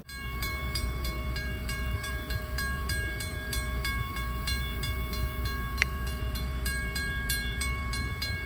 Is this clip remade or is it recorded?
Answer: remade